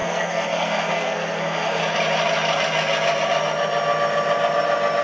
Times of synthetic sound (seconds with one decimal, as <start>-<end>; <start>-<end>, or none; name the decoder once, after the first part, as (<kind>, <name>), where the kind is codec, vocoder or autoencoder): 0.0-1.8 (codec, SNAC)

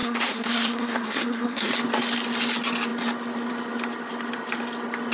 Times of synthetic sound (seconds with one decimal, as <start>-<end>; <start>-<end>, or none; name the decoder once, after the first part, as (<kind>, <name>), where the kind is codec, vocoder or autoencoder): 0.0-1.7 (codec, SNAC)

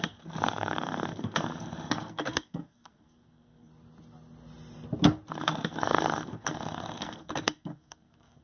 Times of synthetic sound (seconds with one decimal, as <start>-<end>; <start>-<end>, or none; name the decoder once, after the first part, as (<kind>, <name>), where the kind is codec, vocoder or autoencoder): 0.0-3.7 (codec, SNAC); 5.3-8.4